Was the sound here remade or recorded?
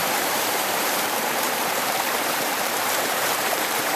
remade